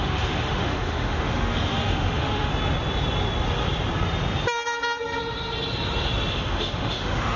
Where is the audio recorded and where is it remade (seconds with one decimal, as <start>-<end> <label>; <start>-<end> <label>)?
0.0-2.5 remade; 2.5-6.3 recorded; 6.3-7.4 remade